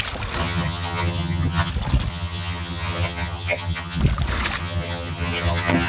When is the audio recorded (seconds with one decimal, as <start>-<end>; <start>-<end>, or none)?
0.0-0.4; 1.7-2.1; 4.0-4.6